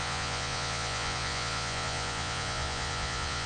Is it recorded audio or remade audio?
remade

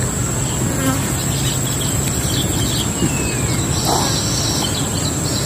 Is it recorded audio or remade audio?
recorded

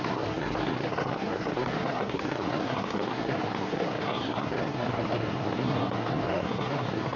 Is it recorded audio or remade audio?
remade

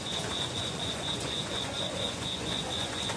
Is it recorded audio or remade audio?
remade